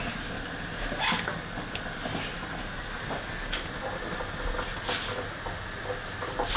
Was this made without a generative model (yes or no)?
yes